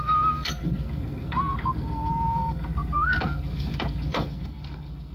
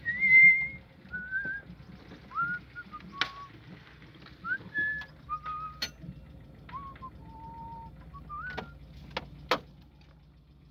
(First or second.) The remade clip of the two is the first